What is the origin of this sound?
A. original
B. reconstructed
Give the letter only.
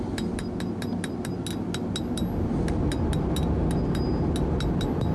A